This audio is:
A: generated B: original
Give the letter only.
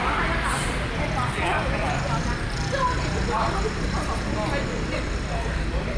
B